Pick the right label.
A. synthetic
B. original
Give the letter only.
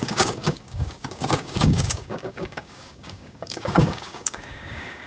A